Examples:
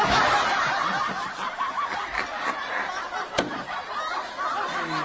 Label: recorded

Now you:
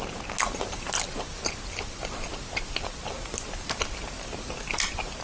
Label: recorded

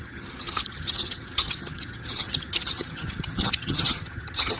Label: remade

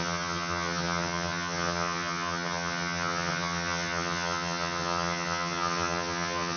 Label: remade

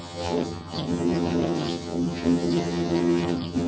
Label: remade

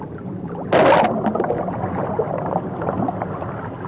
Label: recorded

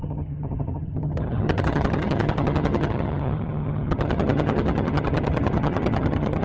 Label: remade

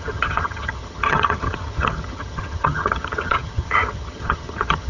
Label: remade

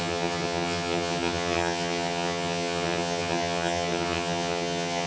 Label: remade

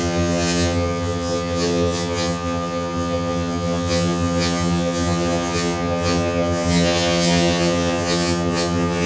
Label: remade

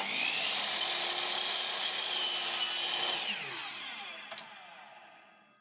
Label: recorded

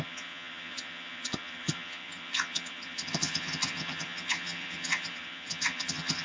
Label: remade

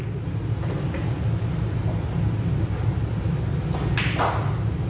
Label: recorded